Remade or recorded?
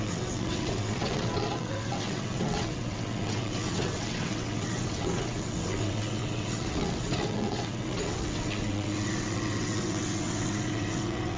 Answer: remade